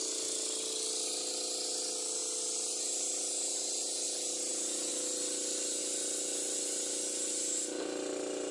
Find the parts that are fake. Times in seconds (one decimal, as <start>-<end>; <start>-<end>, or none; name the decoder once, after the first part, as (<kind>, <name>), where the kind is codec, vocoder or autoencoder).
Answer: none